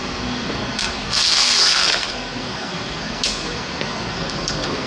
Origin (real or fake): fake